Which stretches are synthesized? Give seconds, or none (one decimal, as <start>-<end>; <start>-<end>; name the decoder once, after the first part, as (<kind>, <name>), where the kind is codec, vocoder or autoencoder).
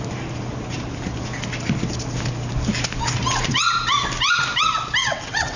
5.0-5.6 (vocoder, WaveNeXt)